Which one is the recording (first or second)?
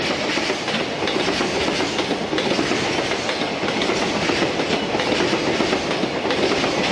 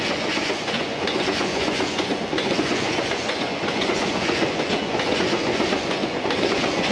first